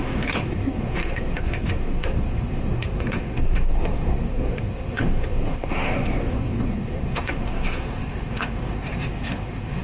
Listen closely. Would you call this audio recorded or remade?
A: remade